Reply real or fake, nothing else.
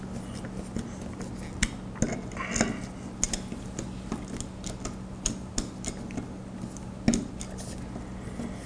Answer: real